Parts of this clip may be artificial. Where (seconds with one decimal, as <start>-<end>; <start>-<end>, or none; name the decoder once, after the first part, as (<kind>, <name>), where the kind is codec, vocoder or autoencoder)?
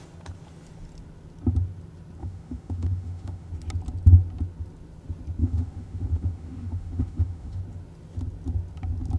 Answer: 2.2-3.5 (autoencoder, DAC-VAE); 5.4-7.6